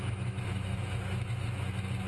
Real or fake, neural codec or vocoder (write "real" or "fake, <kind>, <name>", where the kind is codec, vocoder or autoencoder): fake, autoencoder, DAC-VAE